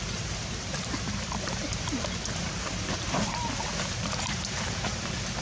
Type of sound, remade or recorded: remade